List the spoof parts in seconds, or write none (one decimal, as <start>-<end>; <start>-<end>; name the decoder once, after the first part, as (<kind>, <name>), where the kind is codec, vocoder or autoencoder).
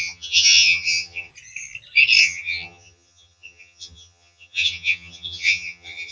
0.0-1.3 (vocoder, HiFi-GAN); 2.2-6.1